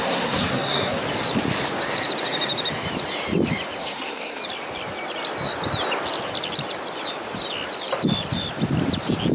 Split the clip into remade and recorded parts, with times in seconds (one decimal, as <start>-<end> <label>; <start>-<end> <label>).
0.0-1.0 remade; 1.0-3.8 recorded; 3.8-4.4 remade; 4.4-9.3 recorded